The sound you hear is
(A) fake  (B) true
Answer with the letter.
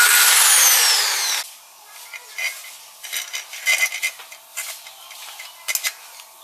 B